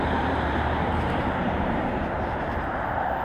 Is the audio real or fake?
fake